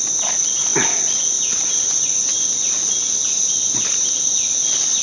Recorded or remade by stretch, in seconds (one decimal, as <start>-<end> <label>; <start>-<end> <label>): 0.0-5.0 recorded